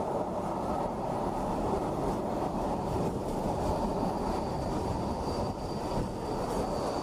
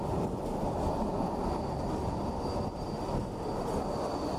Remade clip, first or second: first